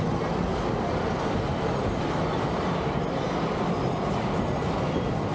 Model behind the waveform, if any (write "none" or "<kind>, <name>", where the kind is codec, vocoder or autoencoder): none